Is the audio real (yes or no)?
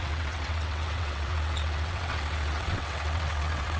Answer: no